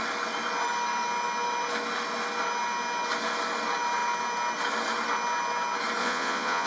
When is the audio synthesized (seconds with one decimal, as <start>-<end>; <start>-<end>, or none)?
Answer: 6.0-6.7